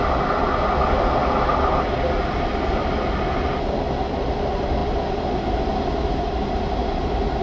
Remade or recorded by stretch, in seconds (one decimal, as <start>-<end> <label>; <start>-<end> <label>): 0.0-7.4 recorded